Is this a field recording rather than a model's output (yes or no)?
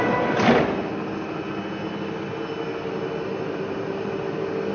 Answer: yes